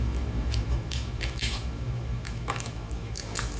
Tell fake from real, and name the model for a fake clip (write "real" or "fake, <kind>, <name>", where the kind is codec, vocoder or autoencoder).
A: fake, autoencoder, DAC-VAE